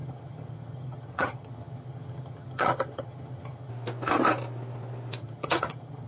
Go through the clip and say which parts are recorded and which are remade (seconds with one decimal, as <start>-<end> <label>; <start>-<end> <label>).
0.0-3.7 remade; 3.7-5.2 recorded; 5.2-6.1 remade